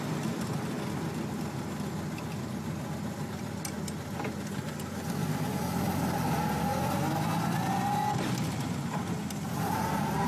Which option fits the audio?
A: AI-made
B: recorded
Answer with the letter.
B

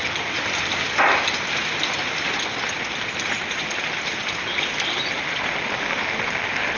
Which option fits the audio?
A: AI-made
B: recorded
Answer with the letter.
B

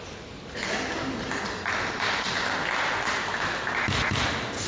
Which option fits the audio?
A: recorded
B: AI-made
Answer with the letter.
A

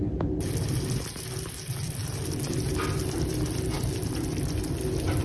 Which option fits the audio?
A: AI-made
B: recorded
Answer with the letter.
B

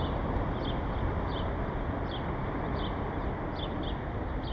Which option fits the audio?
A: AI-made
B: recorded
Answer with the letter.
B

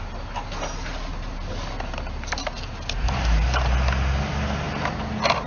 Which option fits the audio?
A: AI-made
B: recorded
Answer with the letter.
B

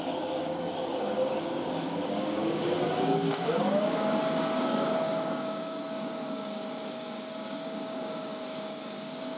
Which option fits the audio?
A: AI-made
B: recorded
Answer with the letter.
A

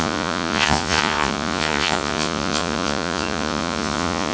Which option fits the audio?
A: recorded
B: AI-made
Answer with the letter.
B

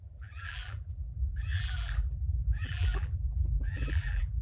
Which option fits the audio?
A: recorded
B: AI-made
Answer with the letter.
B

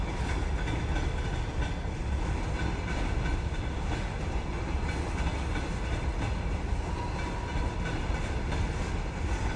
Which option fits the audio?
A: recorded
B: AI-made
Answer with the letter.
A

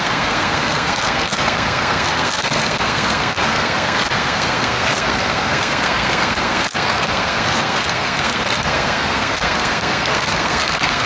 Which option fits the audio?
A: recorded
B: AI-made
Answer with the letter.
B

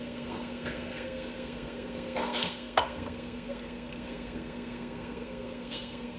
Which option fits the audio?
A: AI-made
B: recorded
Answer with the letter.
A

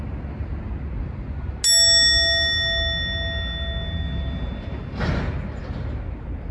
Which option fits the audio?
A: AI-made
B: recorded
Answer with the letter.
B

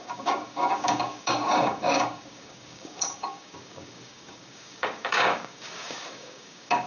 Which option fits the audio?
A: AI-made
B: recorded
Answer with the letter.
A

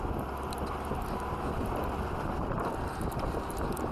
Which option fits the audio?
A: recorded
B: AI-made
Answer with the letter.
A